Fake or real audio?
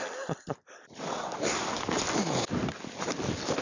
real